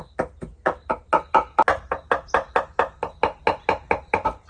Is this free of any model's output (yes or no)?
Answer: yes